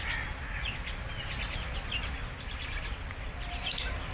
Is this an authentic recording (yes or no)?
yes